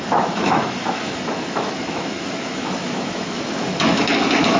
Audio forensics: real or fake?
fake